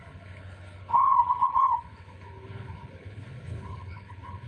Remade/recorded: remade